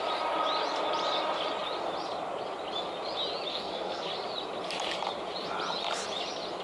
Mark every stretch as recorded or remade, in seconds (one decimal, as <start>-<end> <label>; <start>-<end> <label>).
0.0-3.5 recorded; 3.5-4.1 remade; 4.1-6.6 recorded